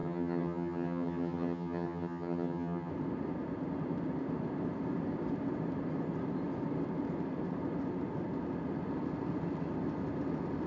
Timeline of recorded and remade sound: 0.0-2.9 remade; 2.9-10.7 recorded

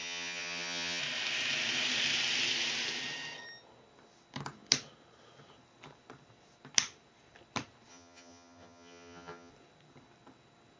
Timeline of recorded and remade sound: 0.0-1.0 remade; 1.0-7.9 recorded; 7.9-9.5 remade; 9.5-10.8 recorded

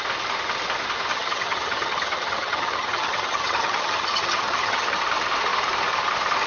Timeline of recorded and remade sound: 0.0-1.1 recorded; 1.1-5.0 remade; 5.0-6.5 recorded

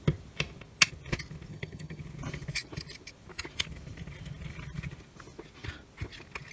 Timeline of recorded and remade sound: 0.0-1.5 recorded; 1.5-2.0 remade; 2.0-6.5 recorded

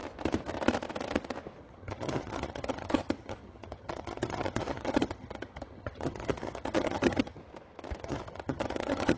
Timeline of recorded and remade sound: 0.0-1.6 recorded; 1.6-7.4 remade; 7.4-8.0 recorded; 8.0-9.2 remade

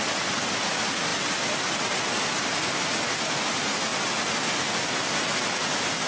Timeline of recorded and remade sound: 0.0-6.1 recorded

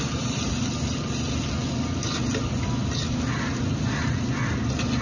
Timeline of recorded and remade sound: 0.0-5.0 recorded

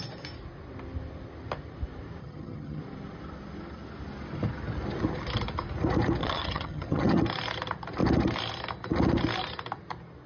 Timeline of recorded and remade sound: 0.0-2.2 recorded; 2.2-2.8 remade; 2.8-6.2 recorded; 6.2-7.2 remade; 7.2-10.3 recorded